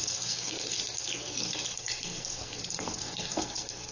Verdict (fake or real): fake